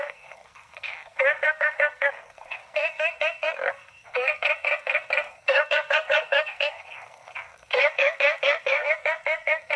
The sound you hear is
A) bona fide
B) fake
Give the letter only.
B